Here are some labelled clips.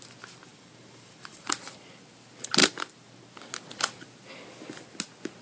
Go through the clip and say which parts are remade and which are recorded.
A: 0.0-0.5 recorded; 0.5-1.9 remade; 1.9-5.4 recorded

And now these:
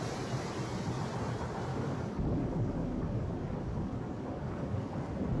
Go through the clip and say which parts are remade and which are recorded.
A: 0.0-1.7 recorded; 1.7-4.9 remade; 4.9-5.4 recorded